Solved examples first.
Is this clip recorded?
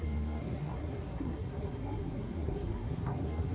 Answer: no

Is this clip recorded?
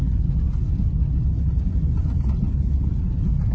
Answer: yes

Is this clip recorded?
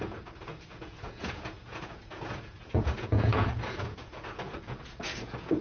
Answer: no